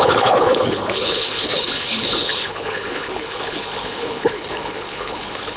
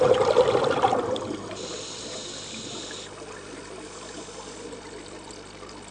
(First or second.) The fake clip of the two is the first